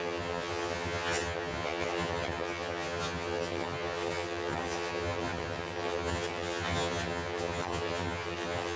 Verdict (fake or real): fake